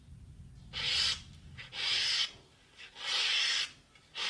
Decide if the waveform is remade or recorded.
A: recorded